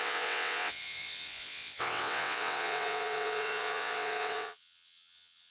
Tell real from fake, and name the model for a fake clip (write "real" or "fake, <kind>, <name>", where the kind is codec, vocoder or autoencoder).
fake, vocoder, WaveNeXt